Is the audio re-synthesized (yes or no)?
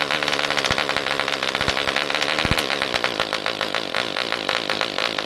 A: yes